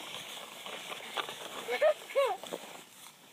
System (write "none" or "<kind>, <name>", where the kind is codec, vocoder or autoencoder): codec, DAC